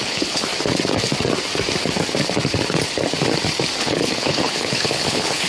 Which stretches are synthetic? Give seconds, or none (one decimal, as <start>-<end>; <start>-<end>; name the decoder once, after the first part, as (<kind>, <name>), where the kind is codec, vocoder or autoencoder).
0.0-0.5 (codec, HILCodec); 3.8-5.5